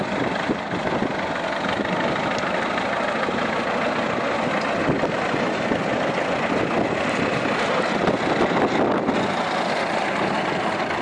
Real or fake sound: real